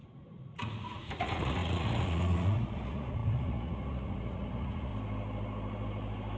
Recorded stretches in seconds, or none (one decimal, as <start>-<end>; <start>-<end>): 4.9-6.4

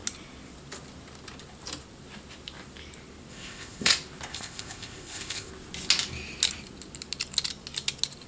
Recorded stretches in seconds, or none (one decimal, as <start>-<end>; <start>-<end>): 0.0-3.3; 3.9-4.3; 5.5-8.3

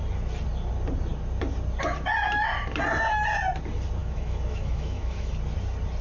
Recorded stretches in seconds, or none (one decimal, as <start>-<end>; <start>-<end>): 0.0-4.0; 5.3-6.0